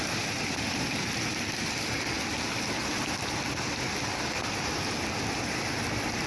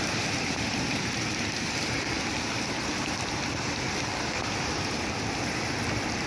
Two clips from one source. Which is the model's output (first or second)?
second